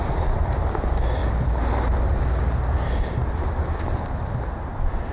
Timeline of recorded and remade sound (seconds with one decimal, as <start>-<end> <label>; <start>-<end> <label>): 0.0-5.1 recorded